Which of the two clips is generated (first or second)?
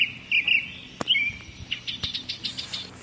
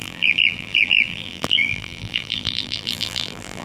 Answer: second